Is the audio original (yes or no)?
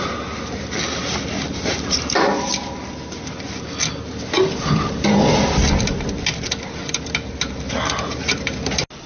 yes